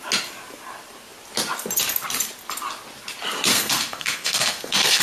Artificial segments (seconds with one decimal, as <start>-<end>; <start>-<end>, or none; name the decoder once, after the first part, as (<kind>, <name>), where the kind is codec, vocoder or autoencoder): 3.5-5.0 (codec, SNAC)